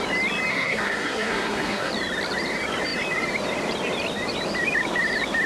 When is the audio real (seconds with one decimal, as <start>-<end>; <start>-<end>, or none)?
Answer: 0.0-0.5; 1.9-5.5